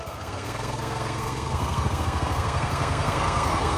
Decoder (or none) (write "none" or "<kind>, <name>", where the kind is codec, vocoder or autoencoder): codec, SNAC